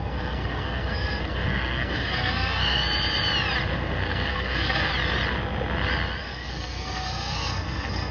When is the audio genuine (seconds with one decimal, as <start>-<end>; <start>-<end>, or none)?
2.8-3.7; 4.9-6.2